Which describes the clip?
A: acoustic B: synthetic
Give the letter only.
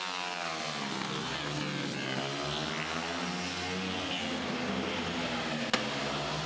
A